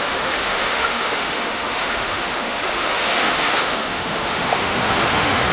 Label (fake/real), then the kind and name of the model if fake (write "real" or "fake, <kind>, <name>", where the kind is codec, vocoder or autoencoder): fake, autoencoder, DAC-VAE